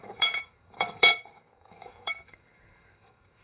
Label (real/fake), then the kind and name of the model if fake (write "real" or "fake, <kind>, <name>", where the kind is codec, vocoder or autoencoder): fake, codec, DAC